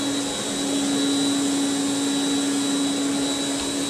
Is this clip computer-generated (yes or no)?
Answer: no